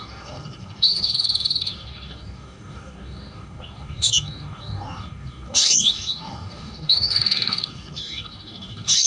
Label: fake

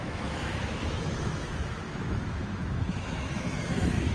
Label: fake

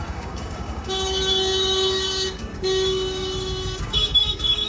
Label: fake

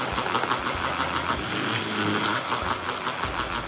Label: real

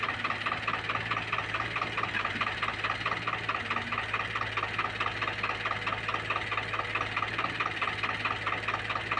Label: real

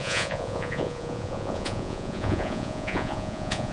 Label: fake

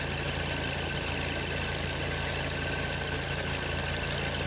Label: real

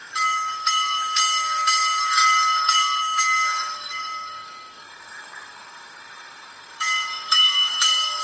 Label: fake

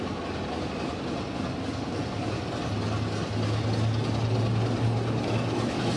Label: real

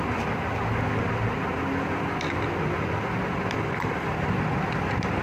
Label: real